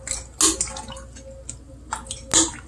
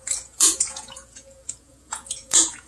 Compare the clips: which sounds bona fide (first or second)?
first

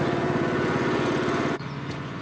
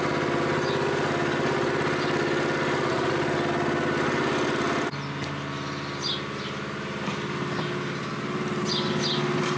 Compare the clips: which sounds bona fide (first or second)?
second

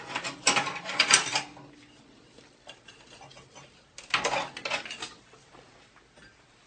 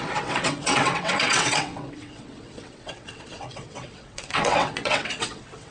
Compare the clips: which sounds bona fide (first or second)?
first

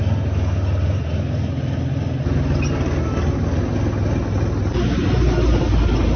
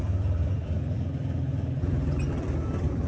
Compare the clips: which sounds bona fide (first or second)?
first